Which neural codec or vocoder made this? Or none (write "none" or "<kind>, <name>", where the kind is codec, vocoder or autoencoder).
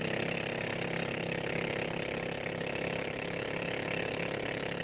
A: none